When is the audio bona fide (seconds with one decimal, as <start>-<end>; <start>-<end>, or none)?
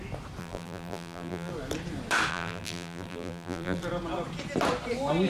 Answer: 0.0-0.4; 1.5-2.3; 3.8-5.3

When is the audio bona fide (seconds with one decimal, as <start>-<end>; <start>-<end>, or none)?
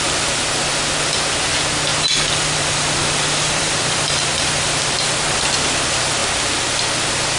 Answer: 0.0-1.9; 4.8-7.4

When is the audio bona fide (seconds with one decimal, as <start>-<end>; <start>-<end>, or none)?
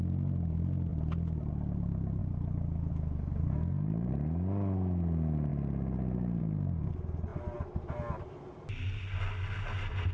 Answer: 0.0-0.9; 1.5-2.2; 2.9-10.1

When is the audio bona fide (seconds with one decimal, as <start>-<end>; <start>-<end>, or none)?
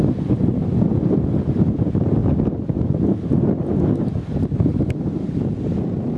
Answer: 0.0-6.2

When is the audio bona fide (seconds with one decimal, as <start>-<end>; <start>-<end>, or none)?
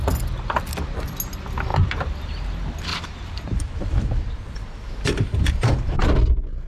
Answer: 1.0-1.7; 2.2-2.9; 6.2-6.7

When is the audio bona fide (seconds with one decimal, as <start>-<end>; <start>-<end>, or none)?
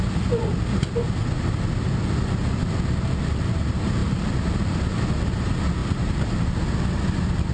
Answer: 0.0-4.0; 4.6-5.8; 6.4-7.5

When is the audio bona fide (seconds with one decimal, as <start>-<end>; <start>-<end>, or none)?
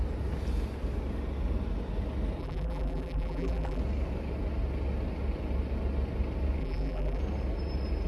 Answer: 0.0-2.4; 3.8-6.6; 7.2-8.1